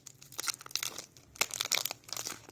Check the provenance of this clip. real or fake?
real